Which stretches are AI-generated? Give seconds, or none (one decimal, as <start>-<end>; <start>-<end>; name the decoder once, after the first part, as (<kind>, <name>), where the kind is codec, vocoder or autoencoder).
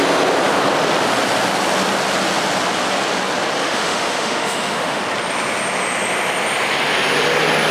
3.6-5.0 (autoencoder, DAC-VAE)